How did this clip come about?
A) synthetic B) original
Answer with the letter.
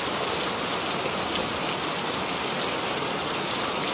B